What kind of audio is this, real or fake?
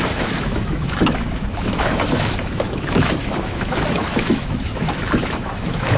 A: fake